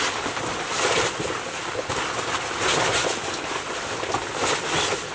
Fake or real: real